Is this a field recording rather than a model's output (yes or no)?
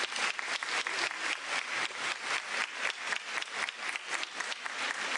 yes